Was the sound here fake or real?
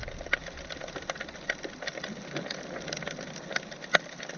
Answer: real